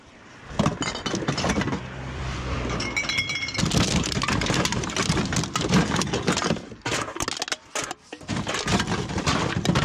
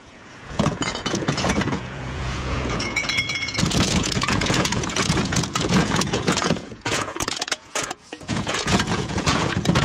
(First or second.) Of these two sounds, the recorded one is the first